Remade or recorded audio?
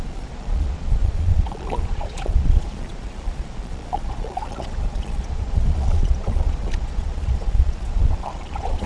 remade